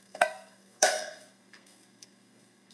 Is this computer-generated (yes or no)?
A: yes